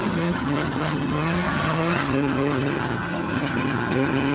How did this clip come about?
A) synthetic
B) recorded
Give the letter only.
A